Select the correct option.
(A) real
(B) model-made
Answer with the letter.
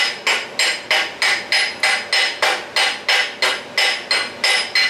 A